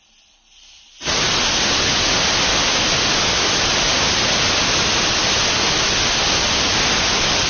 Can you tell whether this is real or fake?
real